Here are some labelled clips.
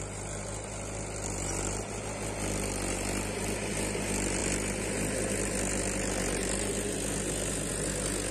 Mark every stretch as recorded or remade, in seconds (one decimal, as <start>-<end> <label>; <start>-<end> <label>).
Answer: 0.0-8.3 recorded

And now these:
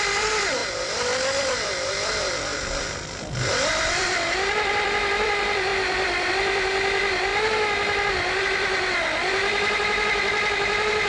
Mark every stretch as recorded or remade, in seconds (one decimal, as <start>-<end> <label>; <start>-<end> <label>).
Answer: 0.0-0.6 remade; 0.6-1.4 recorded; 1.4-2.5 remade; 2.5-3.0 recorded; 3.0-7.3 remade; 7.3-8.4 recorded; 8.4-11.1 remade

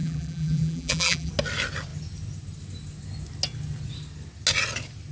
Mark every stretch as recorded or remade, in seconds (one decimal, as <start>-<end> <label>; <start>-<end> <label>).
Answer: 0.0-1.3 remade; 1.3-5.1 recorded

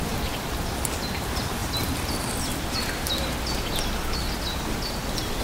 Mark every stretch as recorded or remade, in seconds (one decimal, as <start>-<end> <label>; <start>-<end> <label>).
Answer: 0.0-5.4 recorded

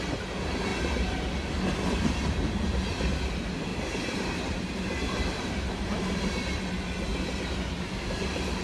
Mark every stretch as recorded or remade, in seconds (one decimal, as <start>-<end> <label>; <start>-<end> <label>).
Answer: 0.0-3.7 recorded; 3.7-6.6 remade; 6.6-7.1 recorded; 7.1-8.6 remade

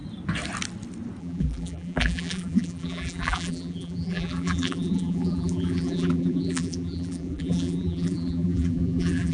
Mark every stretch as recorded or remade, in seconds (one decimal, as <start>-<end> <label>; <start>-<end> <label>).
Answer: 0.0-1.2 recorded; 1.2-9.3 remade